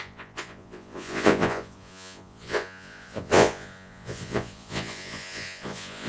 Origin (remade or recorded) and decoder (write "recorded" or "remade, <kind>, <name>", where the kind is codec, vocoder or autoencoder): remade, vocoder, Vocos